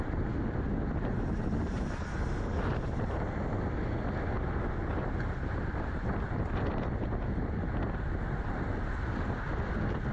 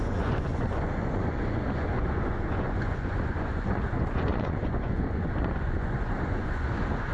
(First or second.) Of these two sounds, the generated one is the second